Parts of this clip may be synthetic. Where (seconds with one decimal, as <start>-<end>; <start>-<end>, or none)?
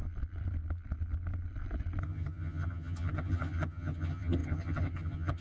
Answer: 2.0-5.4